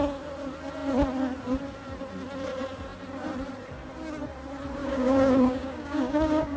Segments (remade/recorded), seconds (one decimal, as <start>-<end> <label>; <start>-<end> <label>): 0.0-4.8 recorded; 4.8-6.6 remade